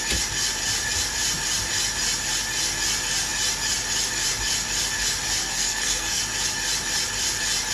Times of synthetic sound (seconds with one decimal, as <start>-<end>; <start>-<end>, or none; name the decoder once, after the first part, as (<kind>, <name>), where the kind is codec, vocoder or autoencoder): 5.5-6.2 (codec, SNAC)